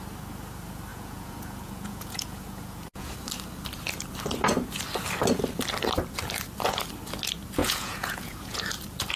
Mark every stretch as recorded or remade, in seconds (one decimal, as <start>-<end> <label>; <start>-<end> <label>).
0.0-0.9 recorded; 0.9-3.1 remade; 3.1-7.6 recorded; 7.6-8.6 remade; 8.6-9.2 recorded